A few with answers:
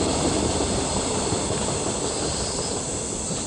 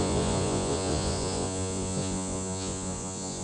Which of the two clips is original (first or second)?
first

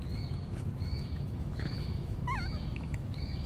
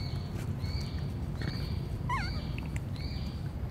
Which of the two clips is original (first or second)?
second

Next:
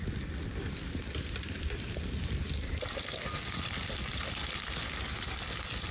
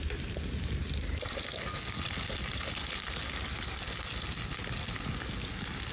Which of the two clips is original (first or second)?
second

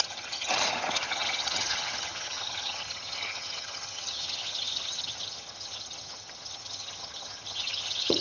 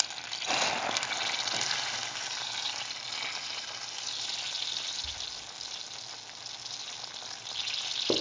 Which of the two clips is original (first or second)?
second